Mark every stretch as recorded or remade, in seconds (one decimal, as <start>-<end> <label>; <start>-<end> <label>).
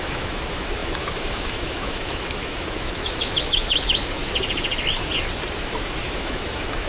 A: 0.0-4.2 remade; 4.2-5.6 recorded; 5.6-6.9 remade